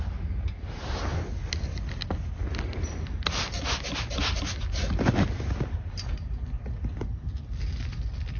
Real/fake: real